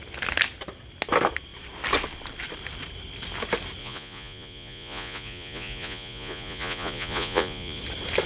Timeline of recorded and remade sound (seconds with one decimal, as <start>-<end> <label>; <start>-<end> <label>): 0.0-3.8 recorded; 3.8-7.8 remade; 7.8-8.3 recorded